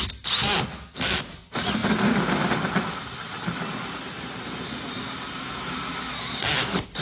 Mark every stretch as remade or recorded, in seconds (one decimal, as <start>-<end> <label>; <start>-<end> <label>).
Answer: 0.0-7.0 recorded